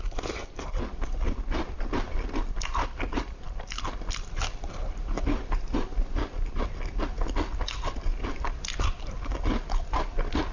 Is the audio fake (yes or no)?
no